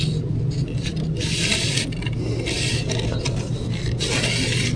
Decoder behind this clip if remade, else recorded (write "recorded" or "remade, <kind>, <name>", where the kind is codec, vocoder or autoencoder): recorded